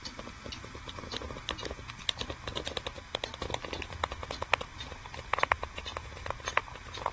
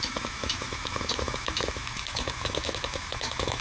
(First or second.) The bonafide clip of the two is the first